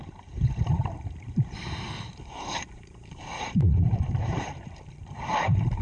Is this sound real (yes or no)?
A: no